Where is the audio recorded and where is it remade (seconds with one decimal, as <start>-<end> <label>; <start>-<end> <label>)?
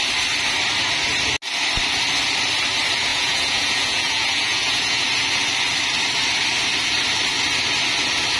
0.0-3.1 recorded; 3.1-5.0 remade; 5.0-8.4 recorded